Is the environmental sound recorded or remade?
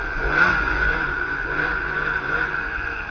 remade